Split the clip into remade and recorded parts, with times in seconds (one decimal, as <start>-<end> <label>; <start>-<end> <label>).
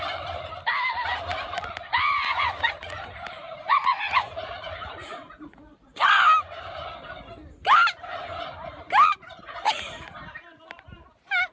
0.0-1.3 recorded; 1.3-6.1 remade; 6.1-9.4 recorded; 9.4-9.9 remade; 9.9-11.5 recorded